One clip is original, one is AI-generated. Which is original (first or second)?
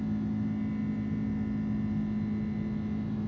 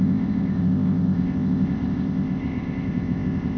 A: first